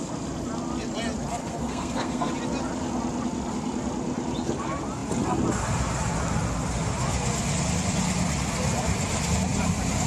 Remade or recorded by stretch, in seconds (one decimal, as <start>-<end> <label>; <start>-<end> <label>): 0.0-1.4 recorded; 1.4-2.3 remade; 2.3-10.1 recorded